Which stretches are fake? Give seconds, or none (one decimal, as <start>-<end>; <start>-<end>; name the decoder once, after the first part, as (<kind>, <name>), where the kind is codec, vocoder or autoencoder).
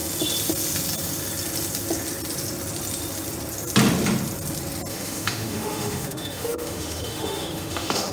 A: 4.9-8.1 (autoencoder, DAC-VAE)